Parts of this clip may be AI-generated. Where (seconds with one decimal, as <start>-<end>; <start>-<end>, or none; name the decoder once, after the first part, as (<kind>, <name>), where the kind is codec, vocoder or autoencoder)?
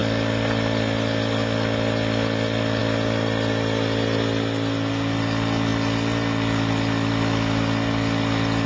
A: none